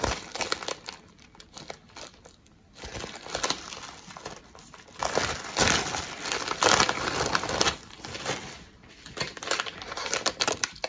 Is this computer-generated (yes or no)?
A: no